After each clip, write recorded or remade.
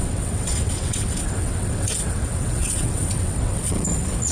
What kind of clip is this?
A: remade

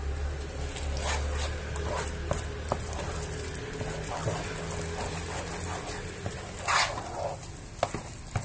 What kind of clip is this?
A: recorded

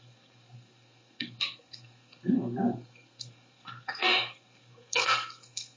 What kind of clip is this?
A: remade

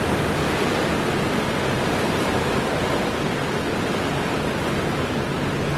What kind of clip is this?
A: recorded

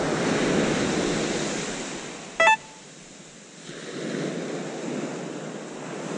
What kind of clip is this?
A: recorded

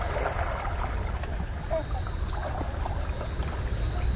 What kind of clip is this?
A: recorded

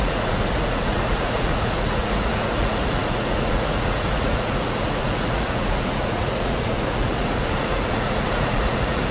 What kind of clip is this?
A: remade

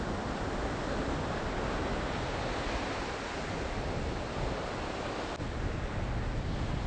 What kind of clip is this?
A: recorded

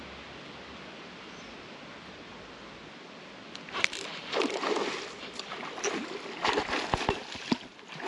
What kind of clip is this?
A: recorded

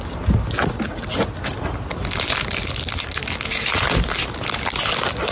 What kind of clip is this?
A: recorded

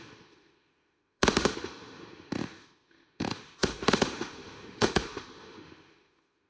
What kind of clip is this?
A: remade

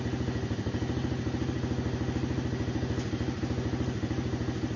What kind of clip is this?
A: recorded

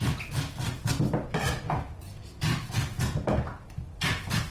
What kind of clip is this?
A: recorded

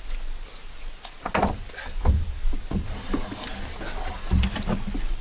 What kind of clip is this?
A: recorded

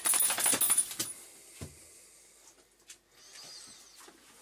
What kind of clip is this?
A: recorded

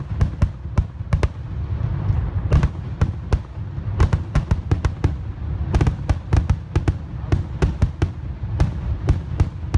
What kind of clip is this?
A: recorded